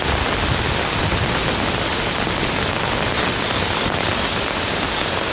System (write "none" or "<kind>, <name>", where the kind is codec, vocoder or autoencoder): none